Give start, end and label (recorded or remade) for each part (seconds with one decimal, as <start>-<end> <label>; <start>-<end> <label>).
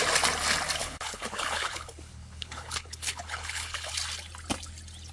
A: 0.0-0.8 recorded; 0.8-3.9 remade; 3.9-5.1 recorded